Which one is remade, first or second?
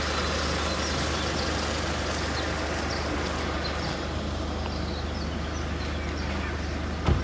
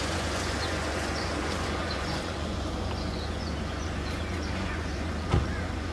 second